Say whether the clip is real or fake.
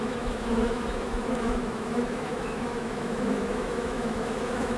fake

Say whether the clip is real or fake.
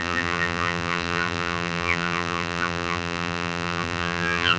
fake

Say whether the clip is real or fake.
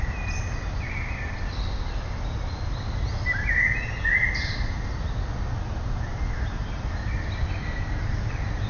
real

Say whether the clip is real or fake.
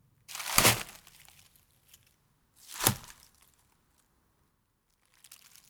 real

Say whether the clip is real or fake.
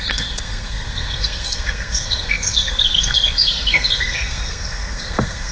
fake